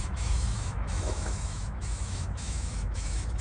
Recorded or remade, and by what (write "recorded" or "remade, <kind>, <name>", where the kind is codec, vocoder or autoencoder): remade, autoencoder, DAC-VAE